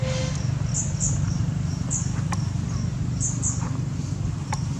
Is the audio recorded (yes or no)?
yes